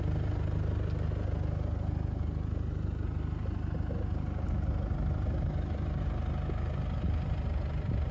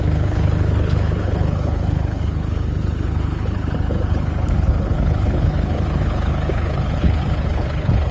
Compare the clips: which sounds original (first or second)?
first